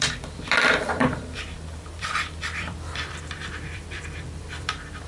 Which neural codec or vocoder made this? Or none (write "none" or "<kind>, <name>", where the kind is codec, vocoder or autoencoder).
vocoder, BigVGAN v2